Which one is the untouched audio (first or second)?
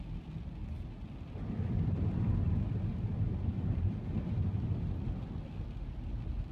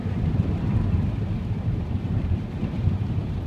first